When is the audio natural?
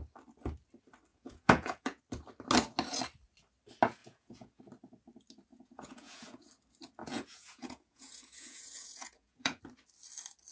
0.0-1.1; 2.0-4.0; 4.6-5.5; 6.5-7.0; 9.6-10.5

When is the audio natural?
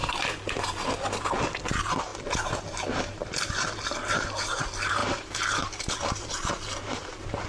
0.0-1.7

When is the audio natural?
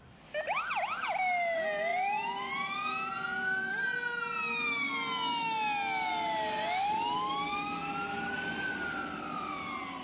0.0-1.9; 3.1-10.0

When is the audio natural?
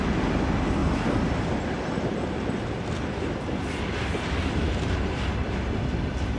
0.0-6.4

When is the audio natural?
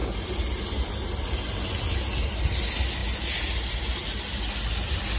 0.0-5.2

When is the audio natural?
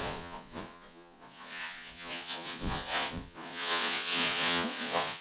none